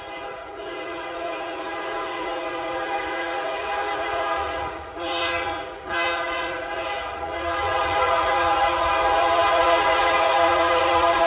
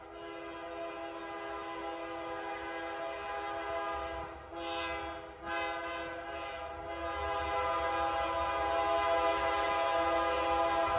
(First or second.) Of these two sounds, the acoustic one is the second